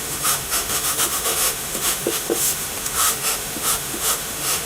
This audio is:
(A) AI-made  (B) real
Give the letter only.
A